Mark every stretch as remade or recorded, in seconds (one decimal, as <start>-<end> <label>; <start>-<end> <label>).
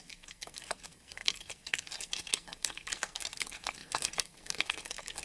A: 0.0-5.2 remade